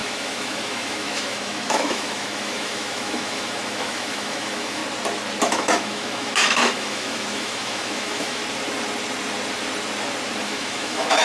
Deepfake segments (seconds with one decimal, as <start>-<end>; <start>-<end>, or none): 0.0-4.8; 5.4-8.4; 10.4-11.2